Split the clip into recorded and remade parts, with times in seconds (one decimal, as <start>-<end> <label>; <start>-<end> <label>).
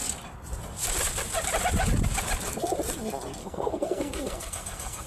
0.0-3.4 recorded; 3.4-5.1 remade